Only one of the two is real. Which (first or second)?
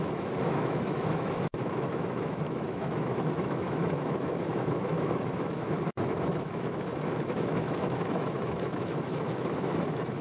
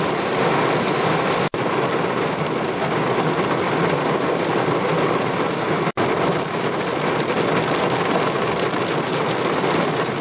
second